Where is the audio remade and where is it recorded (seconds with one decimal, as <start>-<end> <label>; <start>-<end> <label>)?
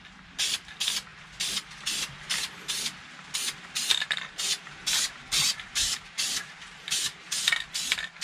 0.0-3.9 recorded; 3.9-7.4 remade; 7.4-8.2 recorded